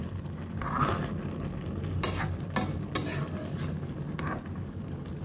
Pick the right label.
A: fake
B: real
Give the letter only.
B